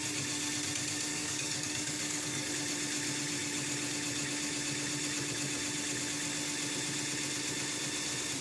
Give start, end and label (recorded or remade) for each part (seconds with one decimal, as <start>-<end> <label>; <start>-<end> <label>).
0.0-1.1 recorded; 1.1-2.5 remade; 2.5-8.4 recorded